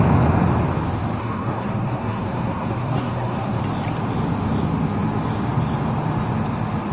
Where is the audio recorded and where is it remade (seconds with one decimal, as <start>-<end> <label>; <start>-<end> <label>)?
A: 0.0-1.2 recorded; 1.2-3.6 remade; 3.6-6.9 recorded